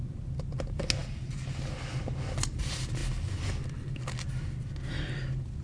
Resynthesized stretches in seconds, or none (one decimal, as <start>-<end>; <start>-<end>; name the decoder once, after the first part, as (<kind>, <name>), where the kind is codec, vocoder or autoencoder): none